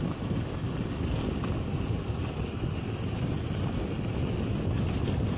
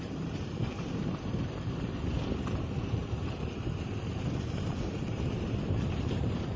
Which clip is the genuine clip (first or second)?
first